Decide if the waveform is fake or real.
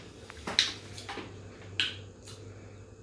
real